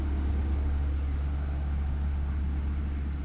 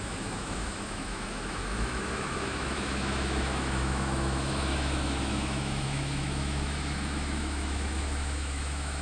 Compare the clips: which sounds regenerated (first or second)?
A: second